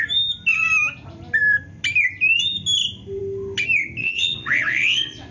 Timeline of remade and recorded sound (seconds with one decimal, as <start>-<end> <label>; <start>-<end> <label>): 0.0-4.0 recorded; 4.0-5.3 remade